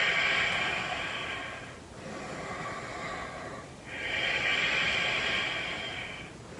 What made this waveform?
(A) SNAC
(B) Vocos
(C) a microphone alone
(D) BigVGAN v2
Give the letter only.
C